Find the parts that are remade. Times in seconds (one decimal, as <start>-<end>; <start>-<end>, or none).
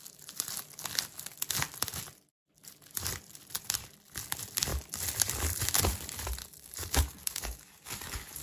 6.4-8.4